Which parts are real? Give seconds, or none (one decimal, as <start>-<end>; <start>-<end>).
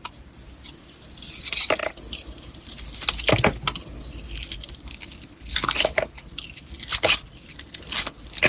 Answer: 0.0-8.5